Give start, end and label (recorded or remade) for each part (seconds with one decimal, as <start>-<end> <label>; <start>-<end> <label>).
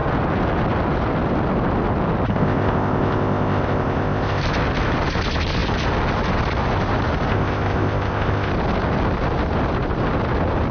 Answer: 0.0-2.3 recorded; 2.3-4.4 remade; 4.4-7.3 recorded; 7.3-8.5 remade; 8.5-10.7 recorded